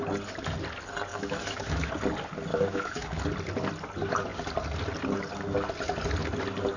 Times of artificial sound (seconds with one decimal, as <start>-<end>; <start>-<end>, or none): 1.1-1.9; 2.5-3.2